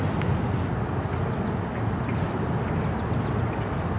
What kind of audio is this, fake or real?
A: real